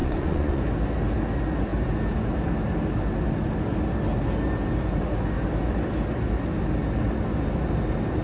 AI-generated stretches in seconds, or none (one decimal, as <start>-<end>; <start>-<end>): 0.0-0.6